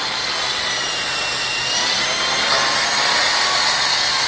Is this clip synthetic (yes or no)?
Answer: no